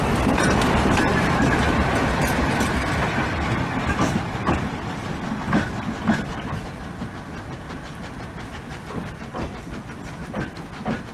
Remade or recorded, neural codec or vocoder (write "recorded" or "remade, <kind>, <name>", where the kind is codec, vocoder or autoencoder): recorded